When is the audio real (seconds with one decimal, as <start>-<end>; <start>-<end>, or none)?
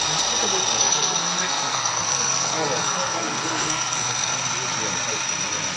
0.0-0.8; 4.3-5.8